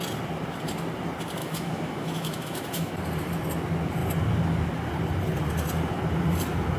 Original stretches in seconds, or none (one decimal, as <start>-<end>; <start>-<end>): 0.0-1.4; 2.9-6.8